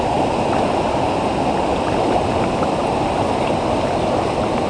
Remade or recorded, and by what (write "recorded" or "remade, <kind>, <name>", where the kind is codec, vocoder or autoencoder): remade, vocoder, BigVGAN v2